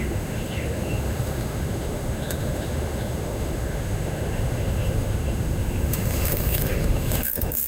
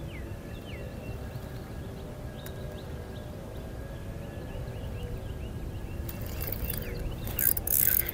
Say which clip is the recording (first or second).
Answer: second